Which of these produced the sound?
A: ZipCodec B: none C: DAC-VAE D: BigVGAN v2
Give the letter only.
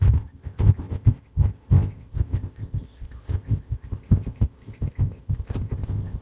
A